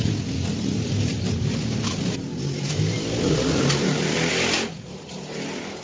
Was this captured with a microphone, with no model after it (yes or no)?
yes